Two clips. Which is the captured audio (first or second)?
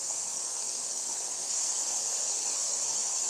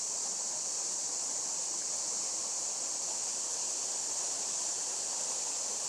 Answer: second